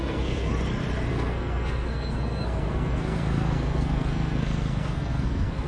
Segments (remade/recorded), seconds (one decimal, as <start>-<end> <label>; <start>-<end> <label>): 0.0-0.5 remade; 0.5-1.1 recorded; 1.1-5.7 remade